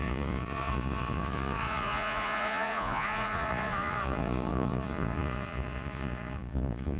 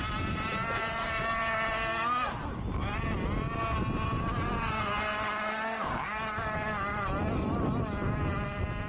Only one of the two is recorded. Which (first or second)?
second